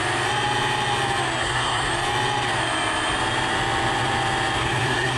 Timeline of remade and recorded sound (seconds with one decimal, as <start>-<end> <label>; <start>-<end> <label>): 0.0-1.4 recorded; 1.4-1.9 remade; 1.9-4.6 recorded; 4.6-5.2 remade